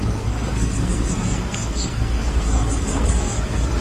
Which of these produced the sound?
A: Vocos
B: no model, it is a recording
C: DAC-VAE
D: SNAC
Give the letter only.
D